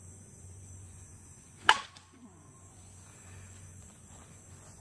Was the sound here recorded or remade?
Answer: remade